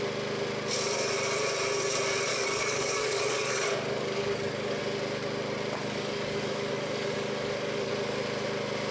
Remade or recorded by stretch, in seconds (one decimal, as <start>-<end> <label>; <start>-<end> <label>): 0.0-2.3 recorded; 2.3-4.8 remade; 4.8-5.8 recorded; 5.8-7.9 remade; 7.9-8.9 recorded